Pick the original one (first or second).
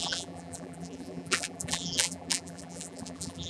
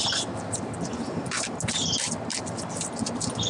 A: second